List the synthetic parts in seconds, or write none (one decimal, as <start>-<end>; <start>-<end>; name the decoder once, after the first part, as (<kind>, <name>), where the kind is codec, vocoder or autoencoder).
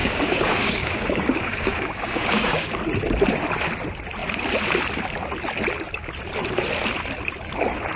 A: 0.0-2.8 (codec, DAC)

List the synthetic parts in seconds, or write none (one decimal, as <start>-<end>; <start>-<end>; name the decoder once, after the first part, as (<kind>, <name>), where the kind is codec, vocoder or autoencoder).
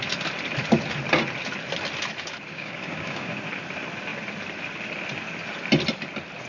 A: 2.5-3.4 (codec, DAC)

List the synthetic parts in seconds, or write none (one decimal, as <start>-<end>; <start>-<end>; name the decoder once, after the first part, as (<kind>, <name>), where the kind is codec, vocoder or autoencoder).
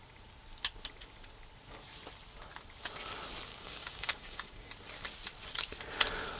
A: 3.5-4.7 (codec, DAC)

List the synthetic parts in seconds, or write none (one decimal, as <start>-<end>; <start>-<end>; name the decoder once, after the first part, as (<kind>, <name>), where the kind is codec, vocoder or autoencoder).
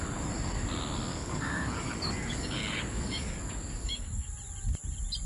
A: 1.1-4.3 (codec, DAC)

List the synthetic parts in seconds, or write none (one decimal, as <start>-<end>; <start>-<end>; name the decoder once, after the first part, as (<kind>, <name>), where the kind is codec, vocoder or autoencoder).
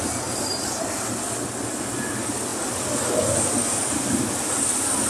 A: none